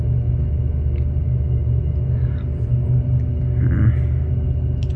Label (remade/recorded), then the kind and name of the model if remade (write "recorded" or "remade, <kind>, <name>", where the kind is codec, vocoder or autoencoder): recorded